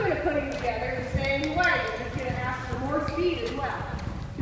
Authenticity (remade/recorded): recorded